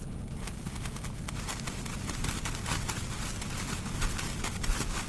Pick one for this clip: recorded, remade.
recorded